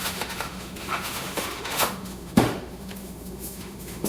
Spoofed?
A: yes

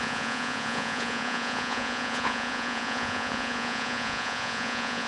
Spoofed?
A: yes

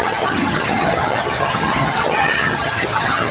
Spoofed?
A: yes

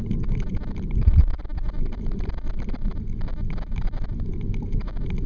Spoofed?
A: no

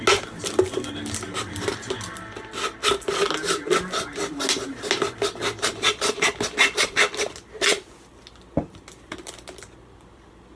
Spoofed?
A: no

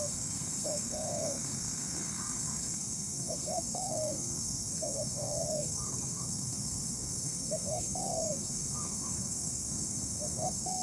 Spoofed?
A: yes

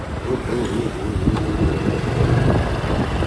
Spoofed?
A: no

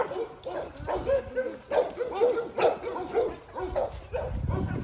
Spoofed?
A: no